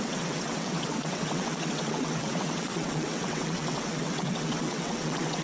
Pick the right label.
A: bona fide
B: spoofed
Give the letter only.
B